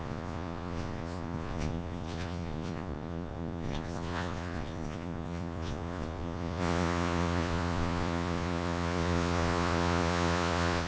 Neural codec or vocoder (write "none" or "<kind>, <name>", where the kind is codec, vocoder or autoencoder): vocoder, Vocos